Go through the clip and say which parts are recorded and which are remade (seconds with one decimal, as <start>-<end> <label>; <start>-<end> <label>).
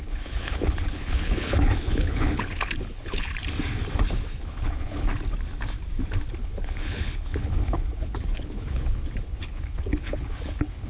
0.0-3.3 remade; 3.3-4.4 recorded; 4.4-5.1 remade; 5.1-6.3 recorded; 6.3-10.9 remade